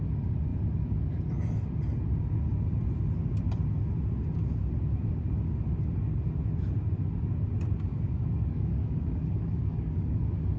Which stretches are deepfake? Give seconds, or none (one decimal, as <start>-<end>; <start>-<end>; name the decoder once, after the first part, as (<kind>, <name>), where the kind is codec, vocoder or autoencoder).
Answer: 7.9-10.2 (codec, DAC)